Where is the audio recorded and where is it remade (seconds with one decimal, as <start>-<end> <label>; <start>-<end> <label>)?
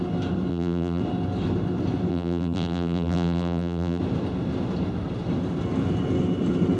0.0-0.5 recorded; 0.5-1.0 remade; 1.0-2.1 recorded; 2.1-4.0 remade; 4.0-6.8 recorded